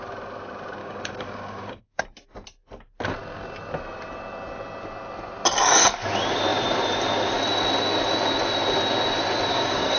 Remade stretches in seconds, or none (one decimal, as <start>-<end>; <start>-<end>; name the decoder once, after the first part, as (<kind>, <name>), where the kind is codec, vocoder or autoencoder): 0.8-2.0 (codec, DAC); 9.5-10.0